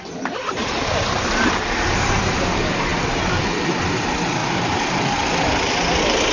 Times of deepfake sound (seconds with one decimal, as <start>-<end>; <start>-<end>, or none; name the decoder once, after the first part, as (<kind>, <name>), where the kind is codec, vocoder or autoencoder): 0.6-2.5 (vocoder, BigVGAN v2); 4.4-5.0